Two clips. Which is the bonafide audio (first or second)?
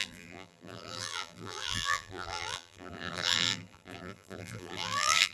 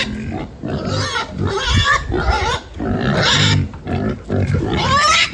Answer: second